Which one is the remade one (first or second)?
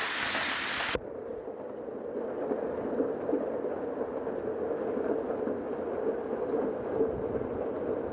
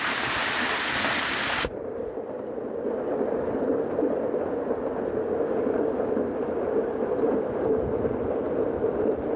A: second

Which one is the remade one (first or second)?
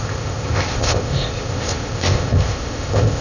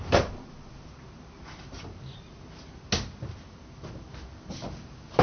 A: first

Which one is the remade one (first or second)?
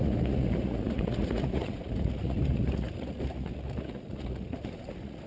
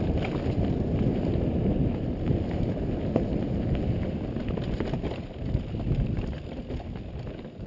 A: first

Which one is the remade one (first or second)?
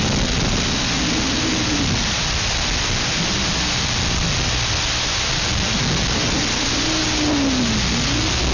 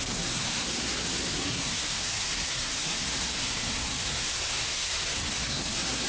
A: second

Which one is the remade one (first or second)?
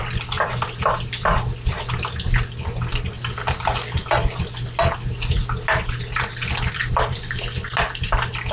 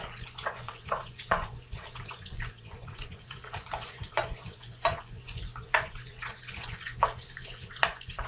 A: second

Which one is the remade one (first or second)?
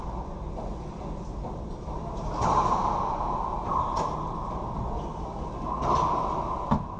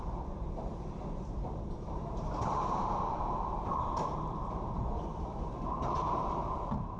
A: second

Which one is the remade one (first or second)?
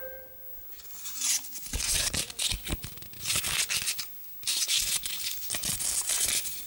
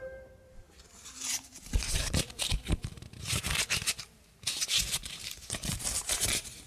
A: second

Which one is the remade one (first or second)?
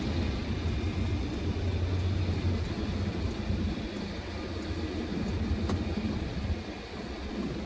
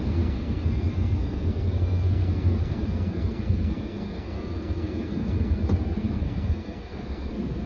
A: second